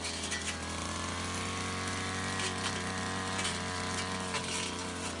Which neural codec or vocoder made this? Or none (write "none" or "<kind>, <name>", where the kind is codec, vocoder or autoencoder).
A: none